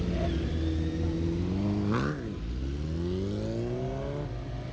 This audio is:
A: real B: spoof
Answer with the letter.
A